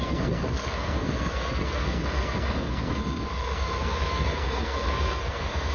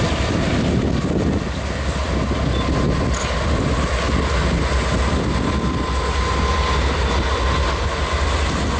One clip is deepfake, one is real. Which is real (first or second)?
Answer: second